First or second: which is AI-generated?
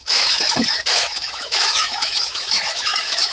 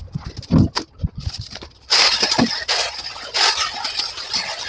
first